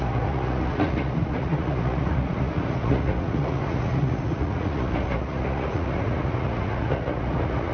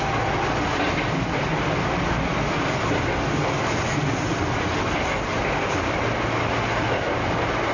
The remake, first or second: first